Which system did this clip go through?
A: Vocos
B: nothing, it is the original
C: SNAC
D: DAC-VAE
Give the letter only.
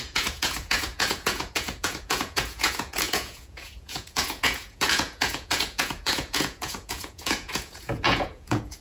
A